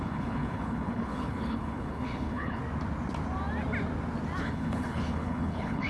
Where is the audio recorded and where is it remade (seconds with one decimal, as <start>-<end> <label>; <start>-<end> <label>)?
0.0-2.6 remade; 2.6-4.4 recorded; 4.4-5.9 remade